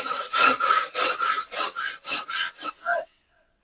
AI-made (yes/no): yes